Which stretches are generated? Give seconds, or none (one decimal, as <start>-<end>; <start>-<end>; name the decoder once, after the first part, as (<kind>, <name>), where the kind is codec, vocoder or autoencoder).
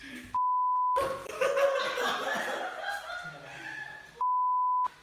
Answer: none